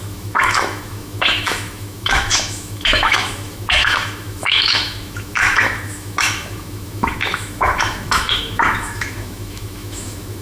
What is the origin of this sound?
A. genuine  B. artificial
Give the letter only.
B